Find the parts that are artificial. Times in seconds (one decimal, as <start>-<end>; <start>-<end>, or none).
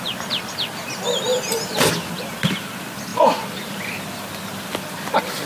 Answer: 1.3-1.9